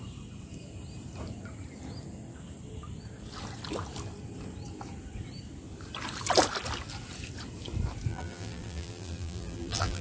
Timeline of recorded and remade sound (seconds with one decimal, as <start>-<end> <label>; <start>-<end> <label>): 0.0-8.1 recorded; 8.1-10.0 remade